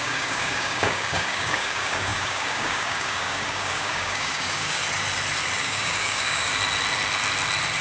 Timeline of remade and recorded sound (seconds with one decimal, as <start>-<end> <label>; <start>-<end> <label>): 0.0-4.8 remade; 4.8-5.6 recorded; 5.6-6.5 remade; 6.5-7.8 recorded